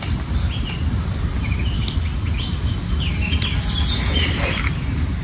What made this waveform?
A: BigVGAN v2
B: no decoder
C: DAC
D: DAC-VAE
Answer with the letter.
B